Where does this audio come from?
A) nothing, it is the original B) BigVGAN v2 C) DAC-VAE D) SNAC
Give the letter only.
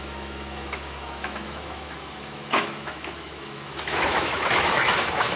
C